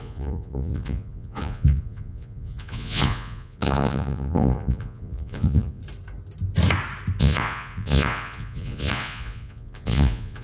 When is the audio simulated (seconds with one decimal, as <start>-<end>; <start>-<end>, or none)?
0.0-5.8; 7.2-10.4